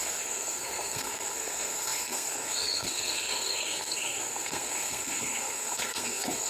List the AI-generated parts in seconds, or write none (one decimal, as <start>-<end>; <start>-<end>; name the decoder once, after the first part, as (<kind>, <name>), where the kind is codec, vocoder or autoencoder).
0.0-6.5 (codec, SNAC)